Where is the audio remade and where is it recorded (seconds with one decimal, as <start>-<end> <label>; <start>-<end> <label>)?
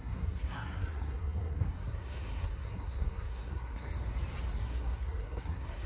0.0-3.9 remade; 3.9-4.6 recorded; 4.6-5.9 remade